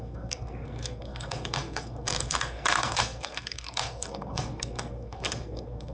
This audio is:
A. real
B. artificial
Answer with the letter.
B